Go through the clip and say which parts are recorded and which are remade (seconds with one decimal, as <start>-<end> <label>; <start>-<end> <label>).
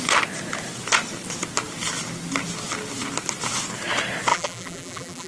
0.0-4.3 recorded; 4.3-5.3 remade